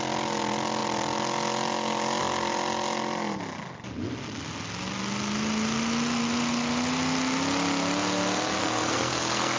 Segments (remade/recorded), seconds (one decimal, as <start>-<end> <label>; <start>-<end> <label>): 0.0-8.6 recorded; 8.6-9.6 remade